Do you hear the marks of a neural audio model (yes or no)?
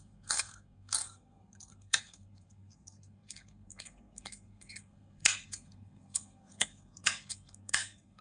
yes